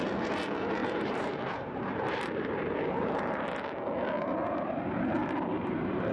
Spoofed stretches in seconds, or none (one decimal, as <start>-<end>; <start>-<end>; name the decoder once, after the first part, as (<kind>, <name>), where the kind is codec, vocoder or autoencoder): 0.8-2.8 (vocoder, BigVGAN v2); 5.2-6.1